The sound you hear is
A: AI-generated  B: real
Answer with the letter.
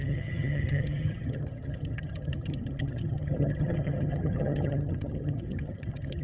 A